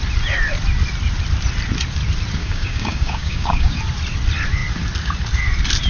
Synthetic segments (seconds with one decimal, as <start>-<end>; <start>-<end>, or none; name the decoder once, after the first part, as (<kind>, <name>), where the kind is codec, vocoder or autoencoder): 2.4-3.8 (codec, DAC)